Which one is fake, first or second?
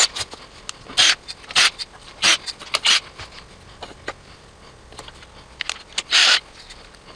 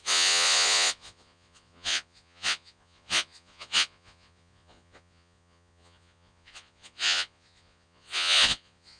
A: second